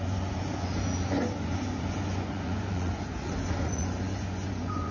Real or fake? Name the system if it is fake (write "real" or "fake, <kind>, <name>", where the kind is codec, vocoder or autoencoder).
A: fake, vocoder, Vocos